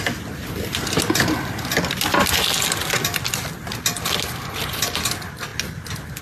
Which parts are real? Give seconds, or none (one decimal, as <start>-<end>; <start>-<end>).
0.0-6.2